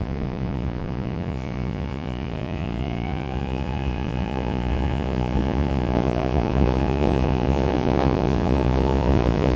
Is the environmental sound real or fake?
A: fake